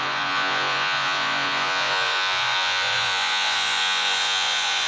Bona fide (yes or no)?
no